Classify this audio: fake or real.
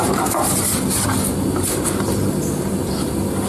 real